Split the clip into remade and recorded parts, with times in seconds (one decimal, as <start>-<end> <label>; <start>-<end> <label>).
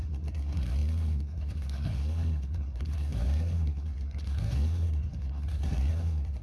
0.0-6.4 remade